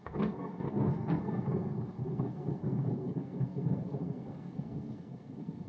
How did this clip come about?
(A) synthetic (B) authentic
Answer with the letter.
A